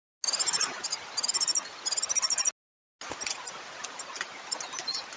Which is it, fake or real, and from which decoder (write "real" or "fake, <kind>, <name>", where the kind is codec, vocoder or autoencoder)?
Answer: real